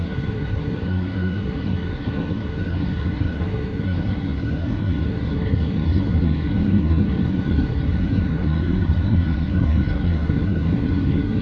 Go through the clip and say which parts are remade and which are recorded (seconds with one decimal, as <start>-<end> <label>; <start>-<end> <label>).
0.0-11.4 remade